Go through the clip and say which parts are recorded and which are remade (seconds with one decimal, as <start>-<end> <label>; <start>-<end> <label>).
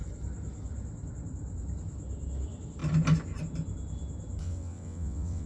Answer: 0.0-4.4 recorded; 4.4-5.5 remade